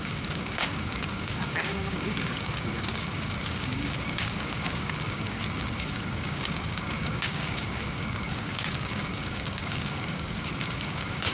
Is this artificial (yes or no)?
yes